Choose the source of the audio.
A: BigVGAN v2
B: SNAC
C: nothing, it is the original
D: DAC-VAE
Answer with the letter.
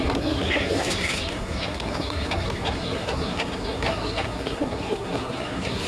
B